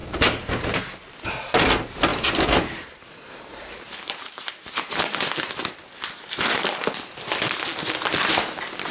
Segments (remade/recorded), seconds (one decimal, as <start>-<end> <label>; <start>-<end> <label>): 0.0-0.8 remade; 0.8-2.1 recorded; 2.1-5.6 remade; 5.6-8.9 recorded